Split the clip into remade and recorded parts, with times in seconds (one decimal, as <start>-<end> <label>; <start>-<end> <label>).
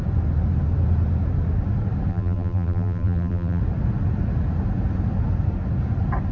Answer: 0.0-2.1 recorded; 2.1-3.6 remade; 3.6-6.3 recorded